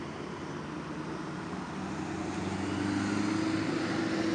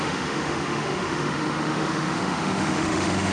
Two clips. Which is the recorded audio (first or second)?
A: first